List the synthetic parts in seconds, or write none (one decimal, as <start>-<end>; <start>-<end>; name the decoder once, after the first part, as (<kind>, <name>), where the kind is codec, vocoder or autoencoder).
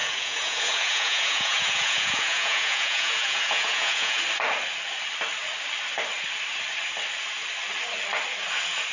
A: 0.0-4.2 (vocoder, Vocos)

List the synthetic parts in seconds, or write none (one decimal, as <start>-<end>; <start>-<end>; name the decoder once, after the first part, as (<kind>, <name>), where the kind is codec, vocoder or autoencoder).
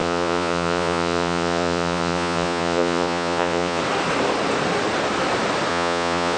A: 0.0-3.8 (vocoder, Vocos); 5.7-6.4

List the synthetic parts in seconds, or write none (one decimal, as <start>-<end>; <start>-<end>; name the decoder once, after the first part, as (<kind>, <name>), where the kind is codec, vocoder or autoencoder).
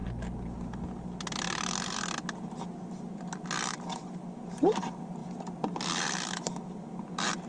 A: none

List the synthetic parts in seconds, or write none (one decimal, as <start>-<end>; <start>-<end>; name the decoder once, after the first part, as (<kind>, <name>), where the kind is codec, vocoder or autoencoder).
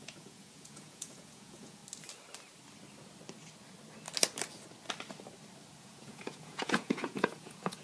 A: 0.0-1.8 (vocoder, Vocos); 5.8-7.8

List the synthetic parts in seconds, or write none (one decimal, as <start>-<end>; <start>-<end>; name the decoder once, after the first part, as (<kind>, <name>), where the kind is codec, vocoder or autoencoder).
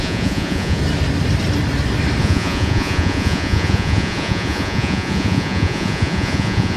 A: 0.0-0.8 (vocoder, Vocos); 2.2-6.8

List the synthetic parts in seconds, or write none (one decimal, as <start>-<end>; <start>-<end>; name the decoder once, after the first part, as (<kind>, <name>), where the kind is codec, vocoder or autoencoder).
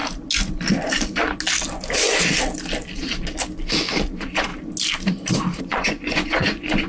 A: 4.1-4.5 (vocoder, Vocos); 5.6-6.9